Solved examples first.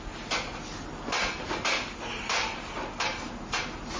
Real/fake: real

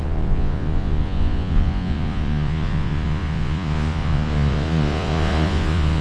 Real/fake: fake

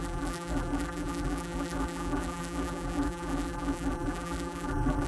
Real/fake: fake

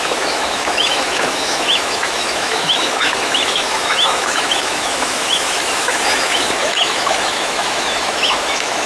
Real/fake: fake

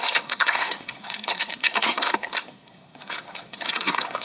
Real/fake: fake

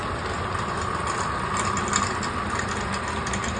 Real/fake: real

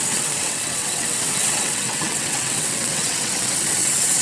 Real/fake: fake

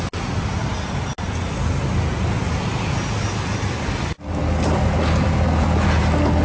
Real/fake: real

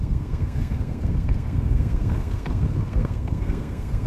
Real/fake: fake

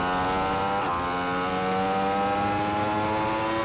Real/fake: real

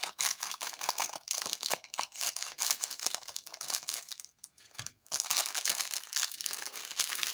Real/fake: fake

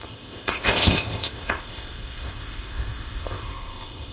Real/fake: fake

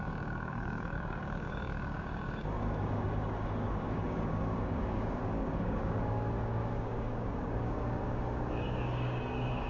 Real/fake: fake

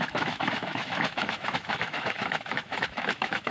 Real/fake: fake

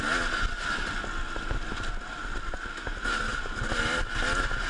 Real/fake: real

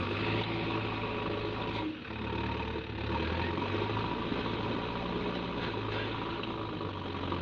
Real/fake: real